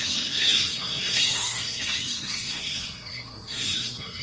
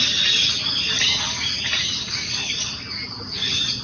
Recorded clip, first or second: second